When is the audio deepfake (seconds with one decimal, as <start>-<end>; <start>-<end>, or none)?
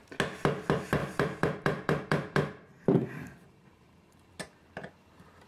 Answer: 1.0-4.3